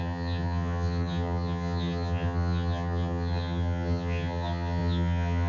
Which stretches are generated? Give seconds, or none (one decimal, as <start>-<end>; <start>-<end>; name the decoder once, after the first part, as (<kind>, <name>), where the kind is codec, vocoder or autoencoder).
0.0-5.5 (vocoder, HiFi-GAN)